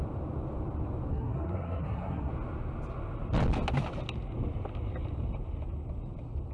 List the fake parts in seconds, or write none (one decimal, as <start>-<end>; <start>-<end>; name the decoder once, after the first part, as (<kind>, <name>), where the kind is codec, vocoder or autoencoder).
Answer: 1.1-2.3 (codec, SNAC)